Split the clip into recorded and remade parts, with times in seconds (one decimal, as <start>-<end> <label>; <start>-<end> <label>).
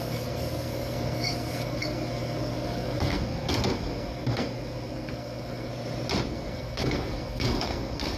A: 0.0-5.7 remade; 5.7-6.3 recorded; 6.3-8.2 remade